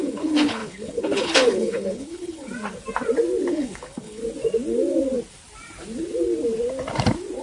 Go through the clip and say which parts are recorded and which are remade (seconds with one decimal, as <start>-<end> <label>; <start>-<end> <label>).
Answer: 0.0-2.5 remade; 2.5-3.5 recorded; 3.5-4.2 remade; 4.2-7.4 recorded